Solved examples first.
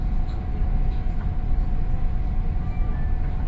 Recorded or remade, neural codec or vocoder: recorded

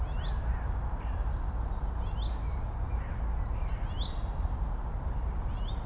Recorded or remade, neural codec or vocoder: recorded